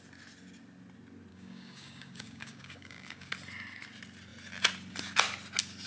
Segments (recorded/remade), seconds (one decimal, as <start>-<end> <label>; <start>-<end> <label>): 0.0-1.3 recorded; 1.3-3.3 remade; 3.3-5.9 recorded